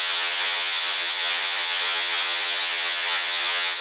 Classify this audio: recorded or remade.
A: remade